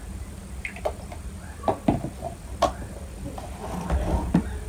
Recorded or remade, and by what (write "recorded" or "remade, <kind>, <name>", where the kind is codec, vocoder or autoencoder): recorded